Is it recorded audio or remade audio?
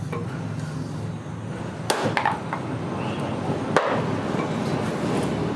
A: recorded